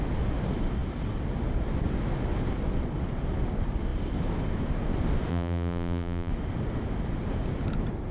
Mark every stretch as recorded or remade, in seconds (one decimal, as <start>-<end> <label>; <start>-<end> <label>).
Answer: 0.0-5.3 recorded; 5.3-6.3 remade; 6.3-8.1 recorded